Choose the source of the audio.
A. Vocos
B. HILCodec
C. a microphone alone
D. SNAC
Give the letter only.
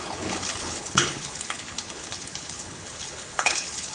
B